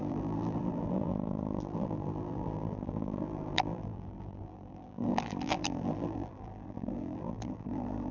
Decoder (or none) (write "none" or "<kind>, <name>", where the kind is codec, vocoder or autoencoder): vocoder, BigVGAN v2